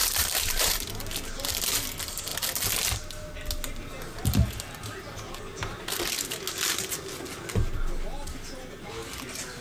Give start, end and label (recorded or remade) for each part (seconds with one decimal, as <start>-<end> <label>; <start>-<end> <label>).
0.0-0.9 remade; 0.9-9.6 recorded